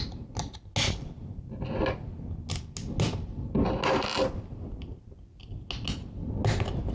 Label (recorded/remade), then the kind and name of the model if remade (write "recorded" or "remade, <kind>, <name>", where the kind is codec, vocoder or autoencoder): recorded